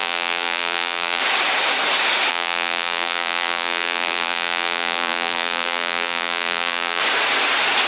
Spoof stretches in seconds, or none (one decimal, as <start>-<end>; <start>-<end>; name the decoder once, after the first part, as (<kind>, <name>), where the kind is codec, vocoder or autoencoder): 0.0-1.2 (vocoder, BigVGAN v2); 2.3-7.0